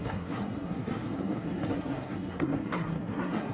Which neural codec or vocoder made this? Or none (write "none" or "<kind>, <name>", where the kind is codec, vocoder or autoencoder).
codec, SNAC